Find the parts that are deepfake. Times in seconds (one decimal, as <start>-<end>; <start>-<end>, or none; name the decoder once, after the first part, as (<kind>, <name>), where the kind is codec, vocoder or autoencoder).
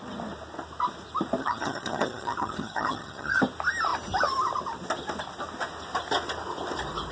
1.4-3.4 (vocoder, HiFi-GAN)